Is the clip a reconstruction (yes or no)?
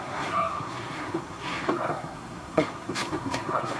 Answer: yes